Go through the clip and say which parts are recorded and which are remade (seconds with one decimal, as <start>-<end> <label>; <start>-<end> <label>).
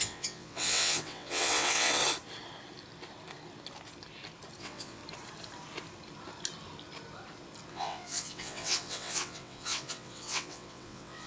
0.0-2.0 remade; 2.0-4.6 recorded; 4.6-5.0 remade; 5.0-7.7 recorded; 7.7-11.3 remade